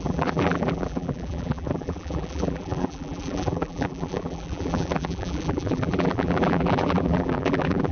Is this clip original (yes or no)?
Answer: no